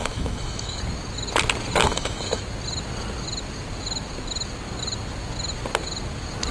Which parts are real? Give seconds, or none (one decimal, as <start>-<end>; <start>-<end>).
0.8-1.8; 2.4-6.5